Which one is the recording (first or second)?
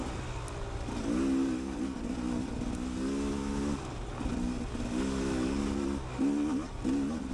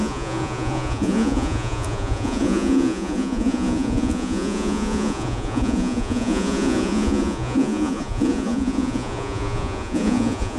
first